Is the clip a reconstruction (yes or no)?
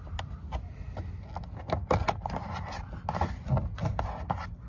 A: no